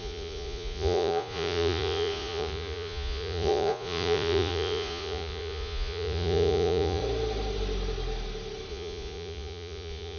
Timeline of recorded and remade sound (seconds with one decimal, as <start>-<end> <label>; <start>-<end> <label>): 0.0-7.0 remade; 7.0-8.7 recorded; 8.7-10.2 remade